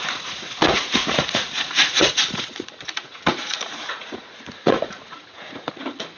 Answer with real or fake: fake